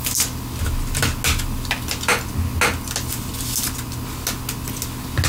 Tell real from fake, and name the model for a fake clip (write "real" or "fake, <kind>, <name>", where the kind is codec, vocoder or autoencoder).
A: real